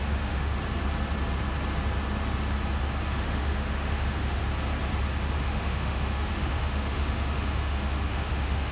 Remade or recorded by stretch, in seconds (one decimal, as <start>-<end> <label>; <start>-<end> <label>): 0.0-0.5 remade; 0.5-3.1 recorded; 3.1-4.5 remade; 4.5-5.4 recorded; 5.4-8.7 remade